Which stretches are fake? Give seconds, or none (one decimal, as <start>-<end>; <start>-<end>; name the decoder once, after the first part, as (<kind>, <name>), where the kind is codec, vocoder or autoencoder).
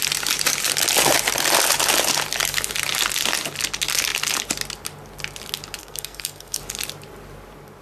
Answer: 5.8-6.6 (codec, SNAC)